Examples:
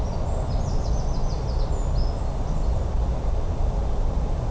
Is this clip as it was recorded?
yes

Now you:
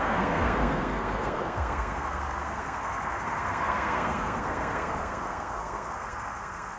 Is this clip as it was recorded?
no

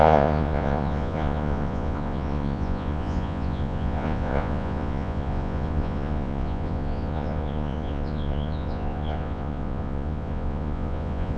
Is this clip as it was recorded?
no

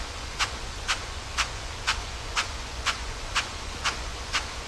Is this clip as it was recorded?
no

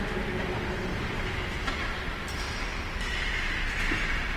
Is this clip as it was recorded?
yes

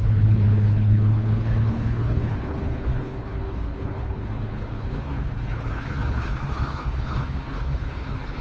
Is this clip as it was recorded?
no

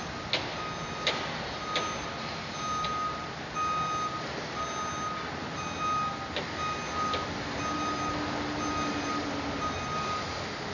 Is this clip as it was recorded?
yes